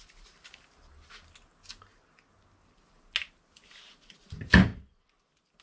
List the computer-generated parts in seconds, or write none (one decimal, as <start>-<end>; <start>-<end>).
none